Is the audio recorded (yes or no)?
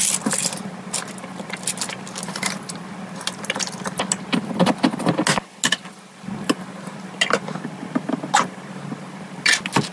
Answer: yes